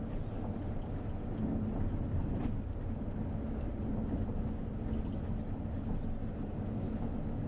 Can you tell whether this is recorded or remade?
recorded